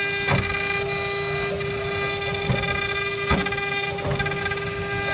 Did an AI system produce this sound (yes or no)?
no